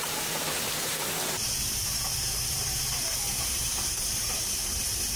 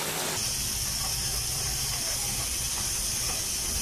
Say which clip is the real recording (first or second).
second